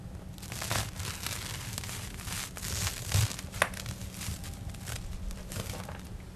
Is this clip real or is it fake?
real